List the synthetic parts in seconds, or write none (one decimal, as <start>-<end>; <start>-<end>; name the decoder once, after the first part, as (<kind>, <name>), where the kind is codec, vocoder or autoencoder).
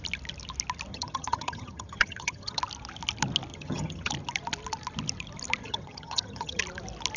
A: 0.9-2.6 (vocoder, HiFi-GAN); 3.5-4.1; 5.6-6.6